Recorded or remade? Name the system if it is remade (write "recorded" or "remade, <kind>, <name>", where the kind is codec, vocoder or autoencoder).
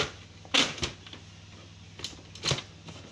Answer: recorded